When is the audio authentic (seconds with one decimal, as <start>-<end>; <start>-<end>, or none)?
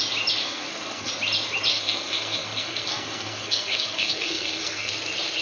0.0-0.4; 1.1-1.7; 4.9-5.4